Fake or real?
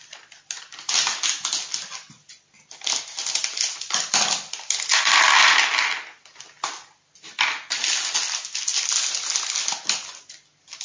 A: real